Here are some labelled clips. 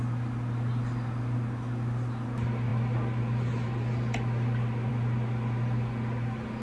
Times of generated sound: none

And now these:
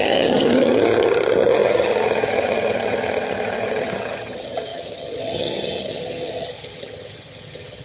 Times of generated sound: 0.0-7.8 (vocoder, HiFi-GAN)

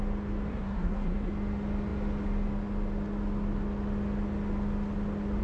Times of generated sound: 0.5-1.3 (codec, SNAC)

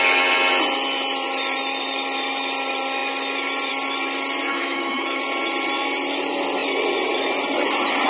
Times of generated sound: 4.5-5.2 (autoencoder, DAC-VAE)

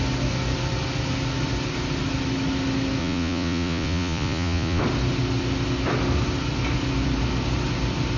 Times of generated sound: 3.0-4.8 (vocoder, Vocos)

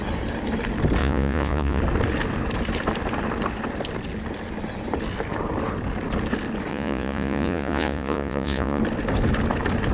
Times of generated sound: 1.0-1.8 (vocoder, Vocos); 6.7-8.8

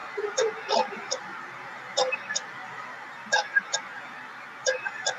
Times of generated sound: 0.0-2.2 (vocoder, BigVGAN v2); 2.6-3.8

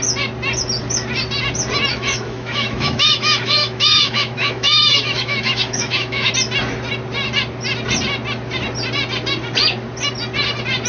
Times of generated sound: 1.9-6.3 (autoencoder, DAC-VAE)